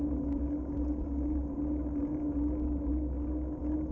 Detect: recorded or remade recorded